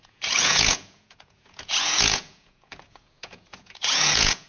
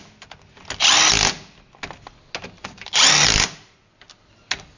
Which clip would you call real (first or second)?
second